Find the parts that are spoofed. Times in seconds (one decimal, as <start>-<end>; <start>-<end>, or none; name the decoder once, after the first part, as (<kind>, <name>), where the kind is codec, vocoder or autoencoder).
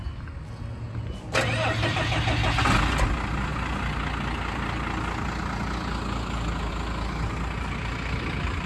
none